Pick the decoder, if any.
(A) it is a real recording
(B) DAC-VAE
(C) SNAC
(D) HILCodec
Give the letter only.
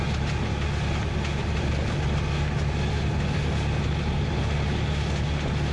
A